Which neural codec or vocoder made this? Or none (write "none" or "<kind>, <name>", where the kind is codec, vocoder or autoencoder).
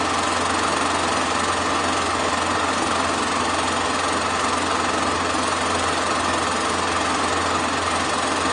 none